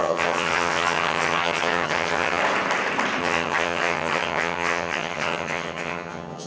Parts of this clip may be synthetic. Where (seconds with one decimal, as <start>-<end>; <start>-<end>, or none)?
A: 0.0-2.4; 3.2-6.5